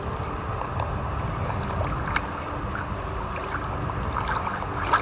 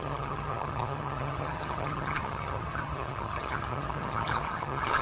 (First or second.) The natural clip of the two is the first